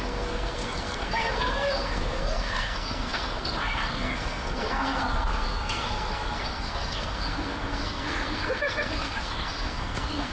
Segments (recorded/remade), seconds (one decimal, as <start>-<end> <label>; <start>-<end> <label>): 0.0-10.3 remade

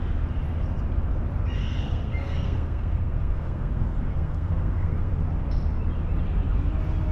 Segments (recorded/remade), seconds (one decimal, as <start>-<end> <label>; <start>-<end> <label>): 0.0-1.6 recorded; 1.6-5.1 remade; 5.1-7.1 recorded

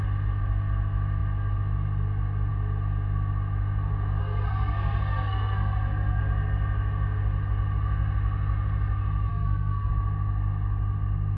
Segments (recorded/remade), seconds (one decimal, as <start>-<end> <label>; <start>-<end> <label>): 0.0-4.2 recorded; 4.2-6.2 remade; 6.2-9.3 recorded; 9.3-9.9 remade; 9.9-11.4 recorded